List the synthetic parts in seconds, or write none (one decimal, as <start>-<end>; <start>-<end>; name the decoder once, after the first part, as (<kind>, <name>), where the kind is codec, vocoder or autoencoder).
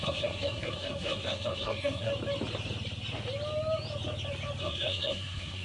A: 0.0-2.1 (codec, SNAC); 4.6-5.6